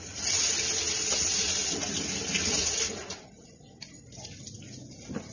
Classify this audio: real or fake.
real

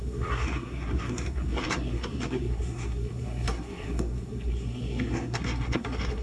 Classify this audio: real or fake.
fake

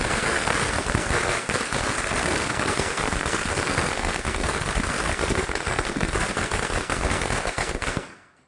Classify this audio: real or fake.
fake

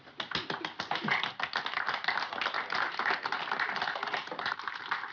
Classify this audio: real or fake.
real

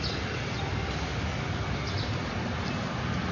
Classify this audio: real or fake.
real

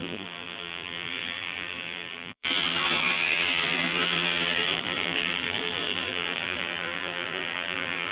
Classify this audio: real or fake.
fake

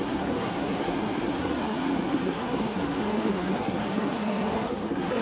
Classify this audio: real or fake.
fake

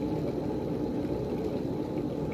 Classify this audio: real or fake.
real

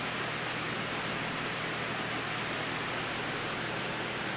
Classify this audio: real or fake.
real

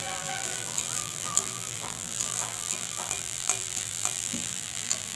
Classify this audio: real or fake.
fake